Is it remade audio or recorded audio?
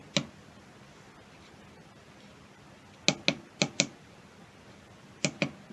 recorded